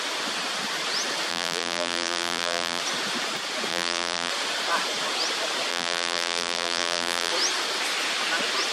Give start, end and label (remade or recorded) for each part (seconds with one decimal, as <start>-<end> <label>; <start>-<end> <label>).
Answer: 0.0-1.3 recorded; 1.3-2.8 remade; 2.8-3.7 recorded; 3.7-4.3 remade; 4.3-5.7 recorded; 5.7-7.3 remade; 7.3-8.7 recorded